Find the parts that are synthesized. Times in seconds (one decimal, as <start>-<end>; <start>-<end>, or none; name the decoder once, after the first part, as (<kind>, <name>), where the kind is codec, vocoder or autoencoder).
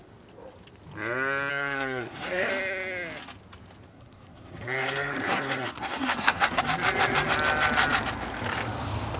1.5-2.5 (codec, SNAC); 3.9-6.6